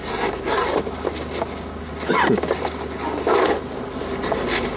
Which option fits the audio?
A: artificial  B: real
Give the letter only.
B